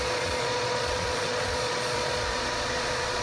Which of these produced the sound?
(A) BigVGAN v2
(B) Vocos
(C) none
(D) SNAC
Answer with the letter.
B